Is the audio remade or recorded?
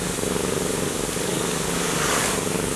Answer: remade